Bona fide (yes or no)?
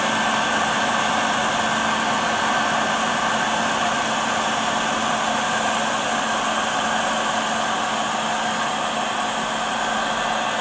yes